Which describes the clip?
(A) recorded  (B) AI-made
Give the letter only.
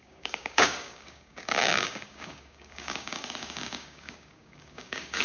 B